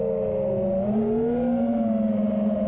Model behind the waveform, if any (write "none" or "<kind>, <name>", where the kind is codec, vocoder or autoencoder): none